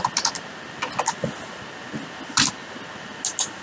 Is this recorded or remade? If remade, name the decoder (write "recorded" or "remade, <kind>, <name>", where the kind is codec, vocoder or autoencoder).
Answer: recorded